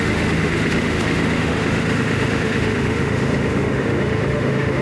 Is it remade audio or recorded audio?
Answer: remade